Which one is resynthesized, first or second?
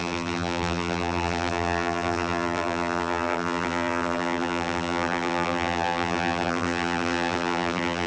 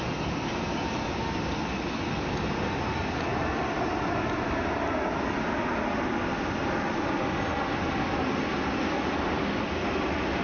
first